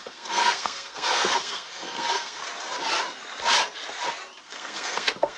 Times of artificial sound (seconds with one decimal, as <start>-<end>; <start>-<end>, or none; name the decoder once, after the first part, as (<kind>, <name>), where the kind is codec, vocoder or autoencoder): 0.0-2.4 (codec, SNAC); 4.4-5.4